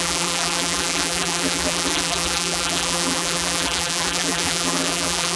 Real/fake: fake